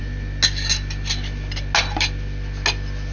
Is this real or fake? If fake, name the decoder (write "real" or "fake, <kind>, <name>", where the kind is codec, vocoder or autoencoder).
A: real